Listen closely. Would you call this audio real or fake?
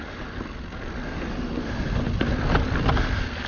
real